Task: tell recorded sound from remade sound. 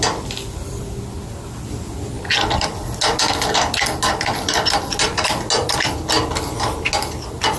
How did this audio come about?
recorded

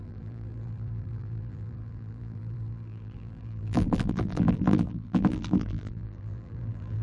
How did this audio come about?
remade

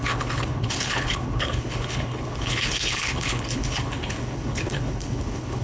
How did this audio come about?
remade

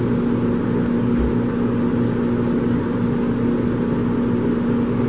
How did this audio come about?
recorded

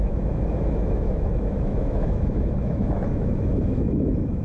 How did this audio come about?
remade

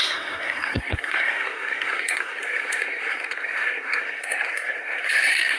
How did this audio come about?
remade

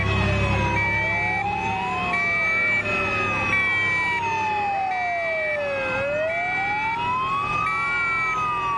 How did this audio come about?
recorded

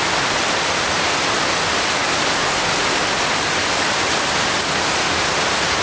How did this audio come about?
recorded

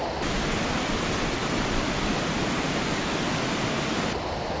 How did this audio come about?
recorded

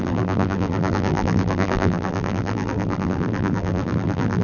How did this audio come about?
remade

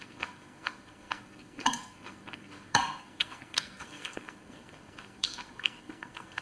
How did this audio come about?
remade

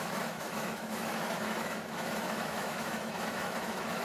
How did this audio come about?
remade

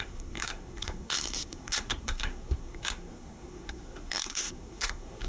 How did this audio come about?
remade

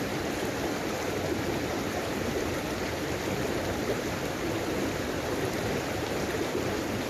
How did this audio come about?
remade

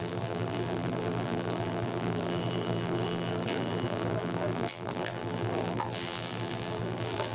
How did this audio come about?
remade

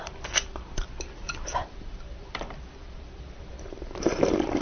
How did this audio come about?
remade